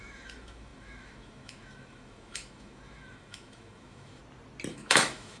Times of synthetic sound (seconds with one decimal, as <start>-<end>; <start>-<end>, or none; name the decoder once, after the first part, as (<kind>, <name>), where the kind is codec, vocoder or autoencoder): 0.0-4.2 (autoencoder, DAC-VAE); 4.7-5.4